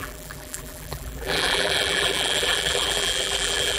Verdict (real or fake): fake